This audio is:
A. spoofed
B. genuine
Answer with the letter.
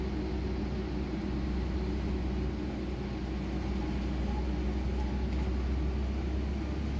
B